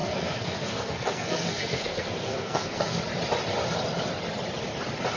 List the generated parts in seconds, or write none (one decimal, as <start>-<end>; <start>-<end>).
0.0-3.0